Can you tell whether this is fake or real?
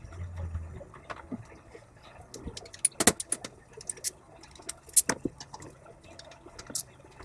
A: real